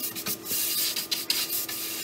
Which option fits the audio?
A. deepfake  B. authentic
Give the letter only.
B